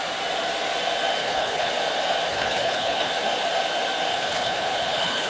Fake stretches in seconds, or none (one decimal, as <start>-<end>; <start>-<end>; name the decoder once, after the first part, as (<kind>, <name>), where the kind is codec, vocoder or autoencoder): 1.2-1.7 (codec, HILCodec); 2.3-3.1; 4.1-5.3